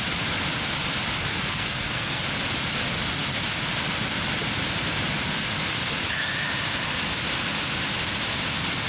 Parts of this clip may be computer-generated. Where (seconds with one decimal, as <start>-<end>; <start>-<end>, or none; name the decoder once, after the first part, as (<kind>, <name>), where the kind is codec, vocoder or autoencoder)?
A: 1.3-2.2 (codec, SNAC)